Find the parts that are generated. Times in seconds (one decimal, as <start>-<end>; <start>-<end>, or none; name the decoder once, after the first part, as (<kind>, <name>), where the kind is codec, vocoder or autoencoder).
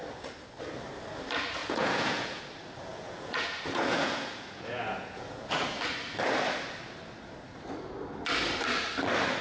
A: 1.6-2.4 (vocoder, Vocos); 2.9-5.8